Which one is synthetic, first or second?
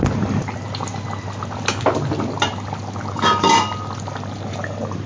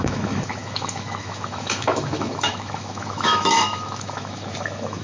second